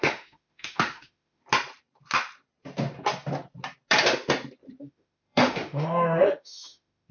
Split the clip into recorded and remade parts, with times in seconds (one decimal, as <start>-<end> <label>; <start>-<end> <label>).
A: 0.0-1.4 remade; 1.4-4.8 recorded; 4.8-7.1 remade

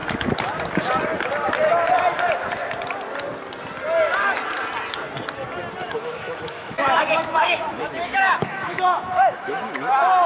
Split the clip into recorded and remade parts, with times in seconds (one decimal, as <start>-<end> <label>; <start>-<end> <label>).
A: 0.0-5.8 recorded; 5.8-9.9 remade; 9.9-10.3 recorded

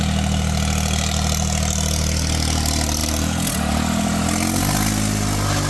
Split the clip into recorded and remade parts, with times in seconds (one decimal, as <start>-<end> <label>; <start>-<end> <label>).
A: 0.0-5.7 recorded